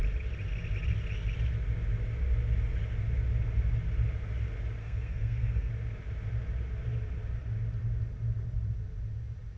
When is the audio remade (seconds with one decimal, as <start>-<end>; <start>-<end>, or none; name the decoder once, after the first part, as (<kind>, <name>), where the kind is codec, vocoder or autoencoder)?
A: 4.8-5.7 (codec, SNAC)